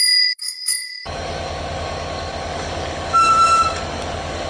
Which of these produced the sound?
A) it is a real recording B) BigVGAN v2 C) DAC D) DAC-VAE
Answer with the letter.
C